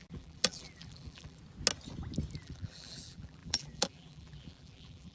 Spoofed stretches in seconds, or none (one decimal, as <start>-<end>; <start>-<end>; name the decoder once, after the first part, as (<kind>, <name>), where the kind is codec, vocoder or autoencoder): 0.0-1.4 (vocoder, BigVGAN v2); 2.4-5.1